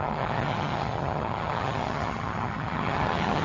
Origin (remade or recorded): remade